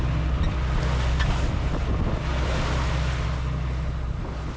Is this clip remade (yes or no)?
no